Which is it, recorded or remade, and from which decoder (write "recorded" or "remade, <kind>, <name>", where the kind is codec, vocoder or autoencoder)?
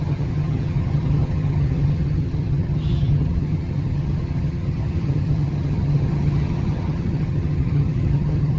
remade, vocoder, HiFi-GAN